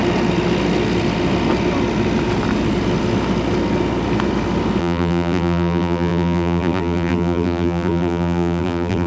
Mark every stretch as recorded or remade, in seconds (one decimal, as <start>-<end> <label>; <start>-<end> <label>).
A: 0.0-4.8 recorded; 4.8-9.1 remade